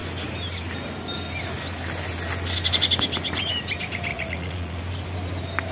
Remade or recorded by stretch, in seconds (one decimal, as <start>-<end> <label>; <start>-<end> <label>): 0.0-4.1 recorded; 4.1-4.8 remade; 4.8-5.7 recorded